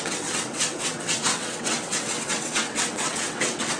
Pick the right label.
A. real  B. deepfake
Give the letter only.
B